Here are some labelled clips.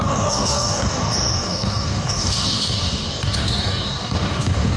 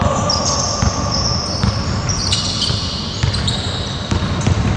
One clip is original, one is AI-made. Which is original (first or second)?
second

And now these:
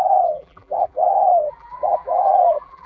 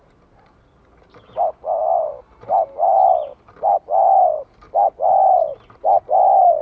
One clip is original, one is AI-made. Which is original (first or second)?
second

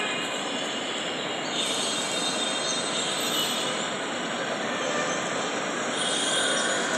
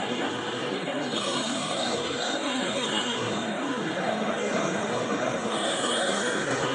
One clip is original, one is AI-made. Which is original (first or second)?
first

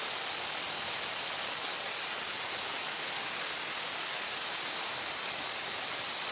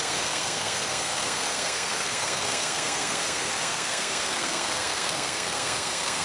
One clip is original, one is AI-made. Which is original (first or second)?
first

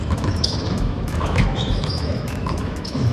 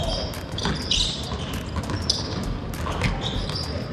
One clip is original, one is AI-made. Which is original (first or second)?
second